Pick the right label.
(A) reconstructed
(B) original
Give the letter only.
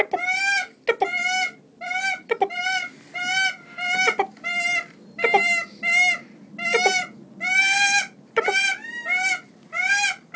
B